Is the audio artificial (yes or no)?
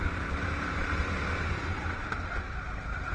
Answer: no